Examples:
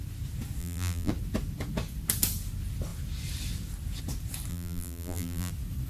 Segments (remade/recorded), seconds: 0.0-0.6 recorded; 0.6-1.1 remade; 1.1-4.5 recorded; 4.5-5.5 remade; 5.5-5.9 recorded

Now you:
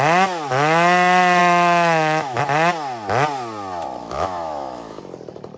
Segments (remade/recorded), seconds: 0.0-1.4 recorded; 1.4-2.4 remade; 2.4-4.0 recorded; 4.0-5.0 remade; 5.0-5.6 recorded